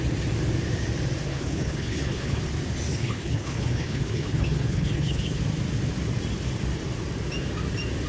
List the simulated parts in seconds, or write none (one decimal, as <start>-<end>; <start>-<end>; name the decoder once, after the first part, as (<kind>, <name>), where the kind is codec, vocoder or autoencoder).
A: 1.3-2.4 (codec, HILCodec); 2.9-5.4